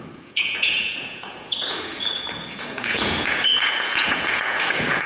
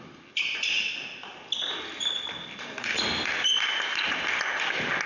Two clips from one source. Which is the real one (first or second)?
second